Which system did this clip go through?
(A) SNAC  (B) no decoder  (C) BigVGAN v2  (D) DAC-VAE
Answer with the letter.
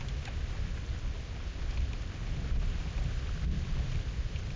B